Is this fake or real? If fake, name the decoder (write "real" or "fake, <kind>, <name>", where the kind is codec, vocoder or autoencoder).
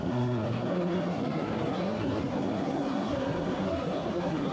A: fake, codec, SNAC